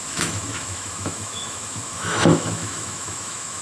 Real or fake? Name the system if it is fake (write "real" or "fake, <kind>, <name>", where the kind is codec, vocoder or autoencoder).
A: fake, autoencoder, DAC-VAE